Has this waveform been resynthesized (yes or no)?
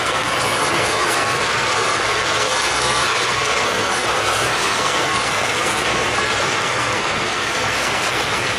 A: yes